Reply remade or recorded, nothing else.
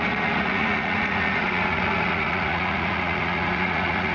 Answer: remade